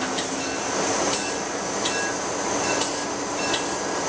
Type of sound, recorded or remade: recorded